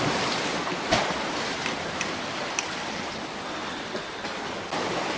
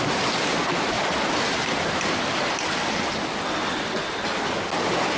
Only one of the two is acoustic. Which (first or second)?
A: second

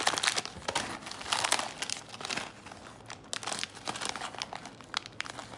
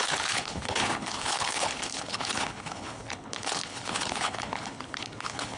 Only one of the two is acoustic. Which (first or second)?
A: first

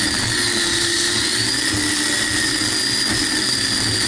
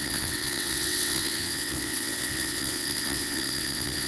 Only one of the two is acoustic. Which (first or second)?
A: first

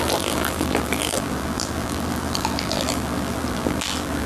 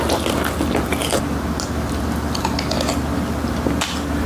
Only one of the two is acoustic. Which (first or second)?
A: second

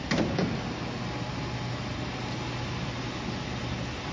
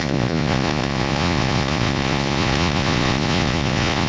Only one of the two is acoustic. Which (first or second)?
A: first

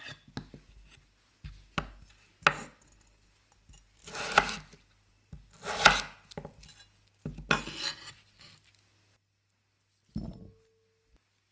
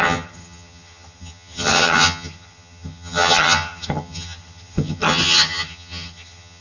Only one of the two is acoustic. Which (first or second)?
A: first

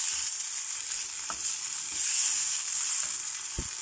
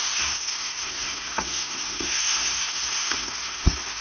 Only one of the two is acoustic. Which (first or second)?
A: first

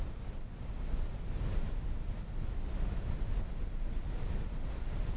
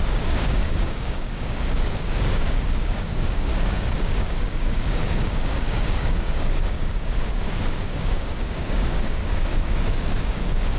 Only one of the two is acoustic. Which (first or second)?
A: first